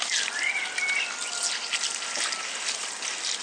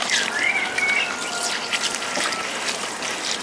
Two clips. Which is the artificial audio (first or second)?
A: second